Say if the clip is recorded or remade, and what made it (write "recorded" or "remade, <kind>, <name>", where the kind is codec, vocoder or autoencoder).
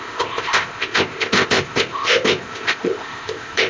remade, codec, ZipCodec